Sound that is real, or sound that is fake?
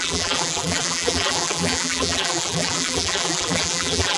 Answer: fake